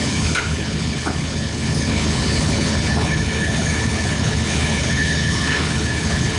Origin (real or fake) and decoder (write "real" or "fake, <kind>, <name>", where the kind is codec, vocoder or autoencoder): fake, codec, HILCodec